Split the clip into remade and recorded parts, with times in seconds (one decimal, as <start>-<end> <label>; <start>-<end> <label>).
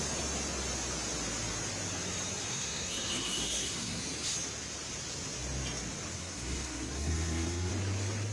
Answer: 0.0-2.5 recorded; 2.5-4.0 remade; 4.0-6.2 recorded; 6.2-7.7 remade; 7.7-8.3 recorded